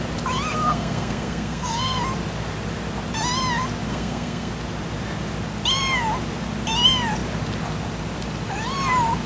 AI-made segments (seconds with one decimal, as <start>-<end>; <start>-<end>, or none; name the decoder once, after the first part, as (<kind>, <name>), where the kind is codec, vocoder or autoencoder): 0.5-2.0 (codec, SNAC); 3.9-4.5